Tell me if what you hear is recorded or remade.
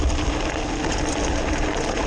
recorded